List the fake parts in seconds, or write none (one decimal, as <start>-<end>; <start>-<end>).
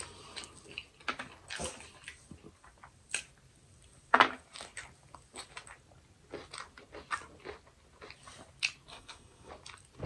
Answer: 8.9-9.5